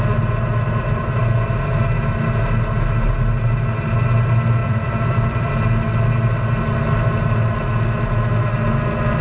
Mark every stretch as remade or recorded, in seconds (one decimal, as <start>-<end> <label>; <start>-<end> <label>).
0.0-4.6 recorded; 4.6-5.5 remade; 5.5-9.2 recorded